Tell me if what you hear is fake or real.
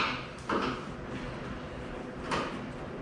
real